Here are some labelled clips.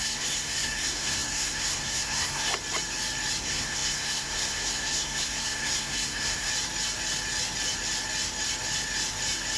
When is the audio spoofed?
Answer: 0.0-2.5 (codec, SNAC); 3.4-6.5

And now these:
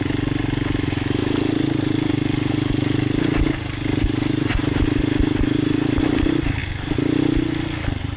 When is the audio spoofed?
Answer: none

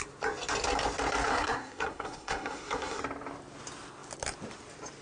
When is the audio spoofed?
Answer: 1.3-3.0 (codec, SNAC)

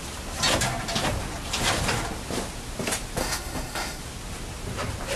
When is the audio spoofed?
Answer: 3.2-4.0 (codec, SNAC)